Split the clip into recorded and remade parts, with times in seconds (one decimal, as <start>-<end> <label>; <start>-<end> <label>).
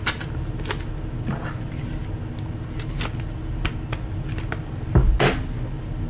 0.0-6.1 recorded